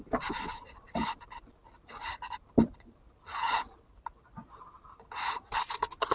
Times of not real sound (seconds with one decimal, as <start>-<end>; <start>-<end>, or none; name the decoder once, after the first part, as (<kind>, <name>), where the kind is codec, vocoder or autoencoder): 0.0-1.6 (vocoder, BigVGAN v2); 5.3-6.1